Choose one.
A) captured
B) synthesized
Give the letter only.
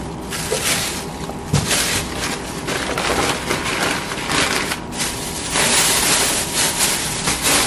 B